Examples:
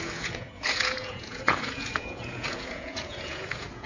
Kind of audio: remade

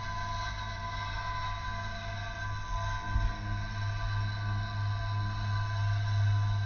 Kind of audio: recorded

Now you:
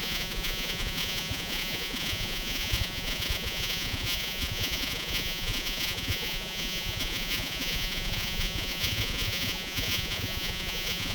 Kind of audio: remade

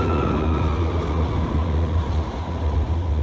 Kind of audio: remade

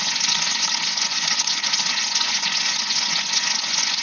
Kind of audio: remade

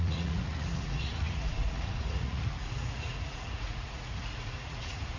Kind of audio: remade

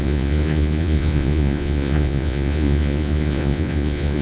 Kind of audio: remade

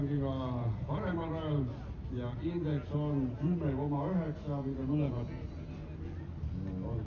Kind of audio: recorded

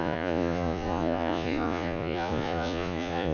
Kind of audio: remade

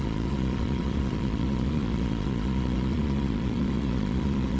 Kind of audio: remade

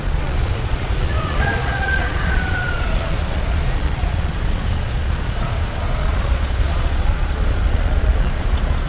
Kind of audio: remade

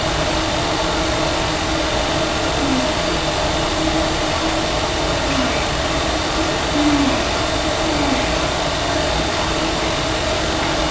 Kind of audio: recorded